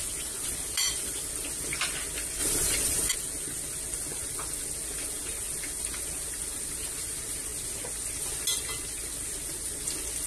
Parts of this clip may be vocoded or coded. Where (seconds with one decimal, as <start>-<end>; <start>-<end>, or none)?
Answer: 2.4-3.1